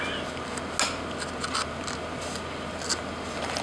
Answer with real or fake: real